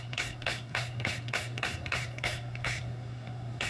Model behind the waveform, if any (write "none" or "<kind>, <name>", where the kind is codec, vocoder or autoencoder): codec, SNAC